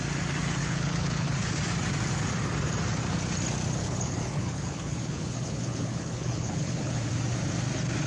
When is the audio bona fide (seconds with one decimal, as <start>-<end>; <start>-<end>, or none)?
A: 0.0-0.6; 1.6-3.8; 7.1-8.1